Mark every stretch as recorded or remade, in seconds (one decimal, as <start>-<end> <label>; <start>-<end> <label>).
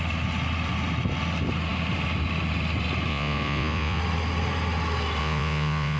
0.0-3.1 recorded; 3.1-4.0 remade; 4.0-5.2 recorded; 5.2-6.0 remade